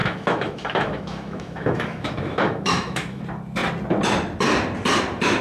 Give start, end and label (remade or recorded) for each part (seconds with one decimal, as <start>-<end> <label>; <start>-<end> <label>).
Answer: 0.0-3.2 remade; 3.2-5.4 recorded